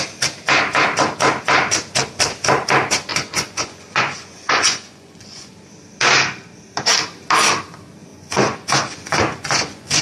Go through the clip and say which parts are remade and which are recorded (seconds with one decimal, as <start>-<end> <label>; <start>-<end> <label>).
0.0-3.1 recorded; 3.1-5.5 remade; 5.5-8.1 recorded; 8.1-10.0 remade